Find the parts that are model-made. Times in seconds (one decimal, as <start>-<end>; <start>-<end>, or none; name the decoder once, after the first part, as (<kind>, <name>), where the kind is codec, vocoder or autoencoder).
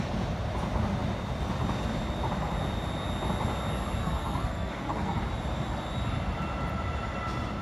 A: 4.0-5.2 (codec, SNAC)